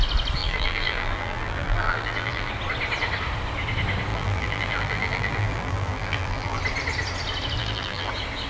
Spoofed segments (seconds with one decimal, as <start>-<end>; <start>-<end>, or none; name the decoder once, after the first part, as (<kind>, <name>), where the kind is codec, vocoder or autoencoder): 0.4-2.5 (vocoder, BigVGAN v2); 4.1-6.6; 7.6-8.1